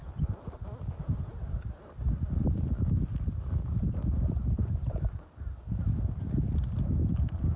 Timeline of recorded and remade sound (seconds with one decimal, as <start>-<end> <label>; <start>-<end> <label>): 0.0-2.6 remade; 2.6-7.6 recorded